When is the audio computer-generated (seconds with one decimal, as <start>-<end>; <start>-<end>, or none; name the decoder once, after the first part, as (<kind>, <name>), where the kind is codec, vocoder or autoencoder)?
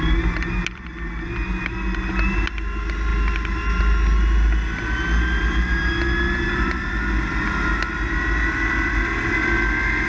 none